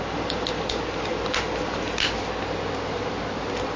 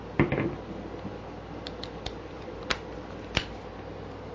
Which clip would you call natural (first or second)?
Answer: first